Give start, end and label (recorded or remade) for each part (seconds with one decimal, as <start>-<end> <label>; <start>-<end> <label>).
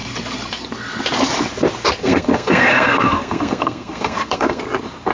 0.0-2.0 recorded; 2.0-4.6 remade; 4.6-5.1 recorded